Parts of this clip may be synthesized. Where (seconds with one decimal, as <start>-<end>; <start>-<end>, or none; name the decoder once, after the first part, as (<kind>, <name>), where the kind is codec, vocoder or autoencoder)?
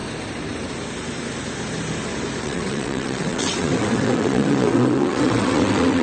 2.4-6.0 (vocoder, WaveNeXt)